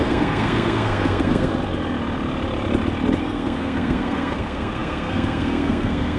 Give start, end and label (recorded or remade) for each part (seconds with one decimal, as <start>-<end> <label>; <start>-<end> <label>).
0.0-1.5 remade; 1.5-3.2 recorded; 3.2-6.2 remade